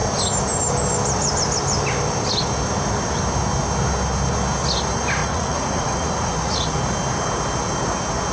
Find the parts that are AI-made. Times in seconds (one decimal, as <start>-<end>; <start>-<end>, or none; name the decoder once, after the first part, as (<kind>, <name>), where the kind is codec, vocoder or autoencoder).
5.2-6.8 (vocoder, Vocos)